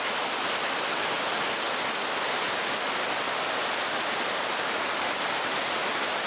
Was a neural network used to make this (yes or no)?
no